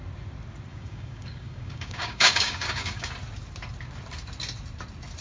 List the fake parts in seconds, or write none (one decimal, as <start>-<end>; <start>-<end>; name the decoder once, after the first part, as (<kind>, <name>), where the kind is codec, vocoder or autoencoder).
0.7-3.1 (codec, DAC)